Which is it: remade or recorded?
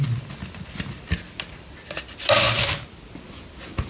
recorded